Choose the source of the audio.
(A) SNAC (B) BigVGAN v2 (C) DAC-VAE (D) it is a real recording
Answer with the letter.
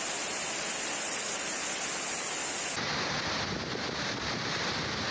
D